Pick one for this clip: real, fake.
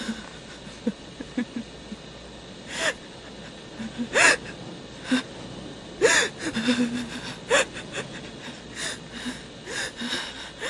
real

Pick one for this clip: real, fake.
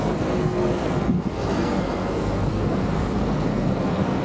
fake